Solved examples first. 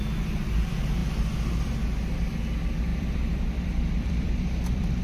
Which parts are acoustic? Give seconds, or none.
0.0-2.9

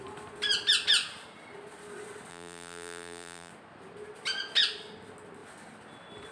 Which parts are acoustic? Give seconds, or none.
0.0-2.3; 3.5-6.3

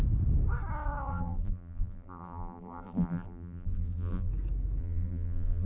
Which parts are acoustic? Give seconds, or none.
0.0-1.1; 4.3-4.8

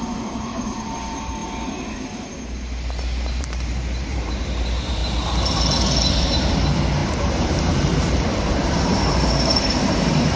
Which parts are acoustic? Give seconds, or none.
1.4-3.4; 5.0-6.1